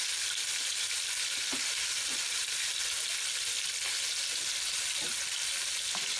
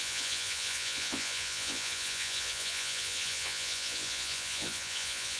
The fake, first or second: second